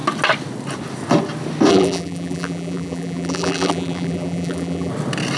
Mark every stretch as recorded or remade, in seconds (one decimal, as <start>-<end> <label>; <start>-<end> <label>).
0.0-1.7 recorded; 1.7-4.9 remade; 4.9-5.4 recorded